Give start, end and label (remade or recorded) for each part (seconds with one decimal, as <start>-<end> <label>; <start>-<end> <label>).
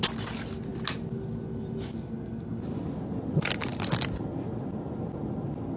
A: 0.0-5.8 recorded